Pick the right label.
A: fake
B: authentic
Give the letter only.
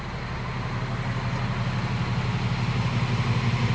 B